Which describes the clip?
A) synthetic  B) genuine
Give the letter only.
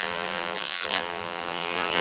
A